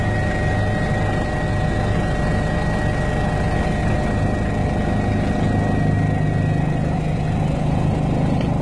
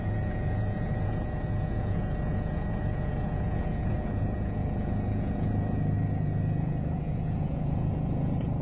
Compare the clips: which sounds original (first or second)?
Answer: first